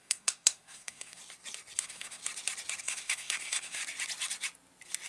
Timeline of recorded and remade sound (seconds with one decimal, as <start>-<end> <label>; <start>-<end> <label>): 0.0-1.2 remade; 1.2-1.8 recorded; 1.8-2.2 remade; 2.2-2.8 recorded; 2.8-3.8 remade; 3.8-5.1 recorded